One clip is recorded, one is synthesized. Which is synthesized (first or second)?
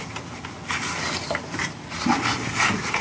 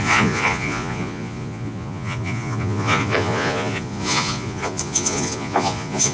second